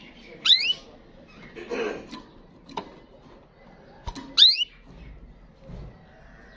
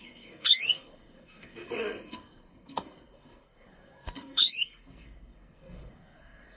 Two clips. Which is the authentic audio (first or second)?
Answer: first